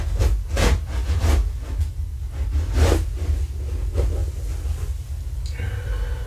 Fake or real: real